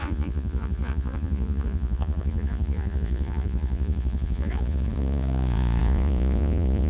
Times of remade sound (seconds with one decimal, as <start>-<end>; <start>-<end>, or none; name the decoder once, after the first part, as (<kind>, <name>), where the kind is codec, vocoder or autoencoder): 0.0-6.9 (vocoder, Vocos)